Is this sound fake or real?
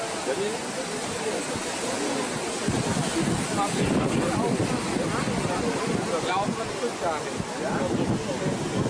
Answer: real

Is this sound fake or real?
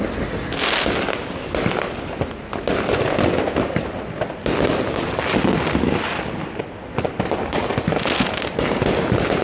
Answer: real